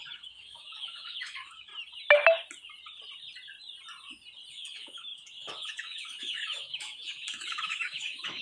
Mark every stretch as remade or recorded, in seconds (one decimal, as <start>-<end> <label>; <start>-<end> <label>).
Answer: 0.0-1.7 remade; 1.7-4.5 recorded; 4.5-8.4 remade